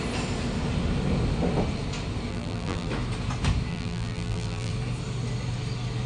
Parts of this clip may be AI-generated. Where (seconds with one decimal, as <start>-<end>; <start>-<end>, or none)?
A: 2.3-2.9; 3.7-4.7